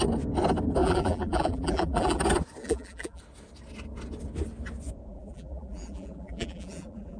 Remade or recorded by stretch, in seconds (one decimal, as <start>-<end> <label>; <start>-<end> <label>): 0.0-0.8 recorded; 0.8-2.2 remade; 2.2-2.6 recorded; 2.6-3.2 remade; 3.2-5.1 recorded; 5.1-7.2 remade